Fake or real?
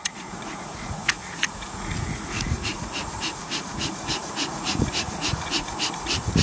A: fake